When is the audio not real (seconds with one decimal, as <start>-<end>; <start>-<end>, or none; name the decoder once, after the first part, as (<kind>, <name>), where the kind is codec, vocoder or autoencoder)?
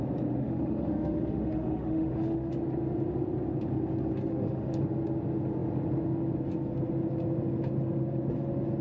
0.4-2.5 (autoencoder, DAC-VAE); 4.3-4.8